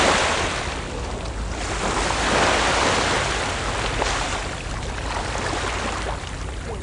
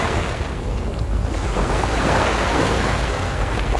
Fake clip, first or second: second